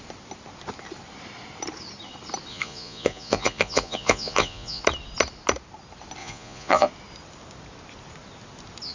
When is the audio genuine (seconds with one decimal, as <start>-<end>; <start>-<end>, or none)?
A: 0.0-2.5; 4.8-6.2; 6.9-8.9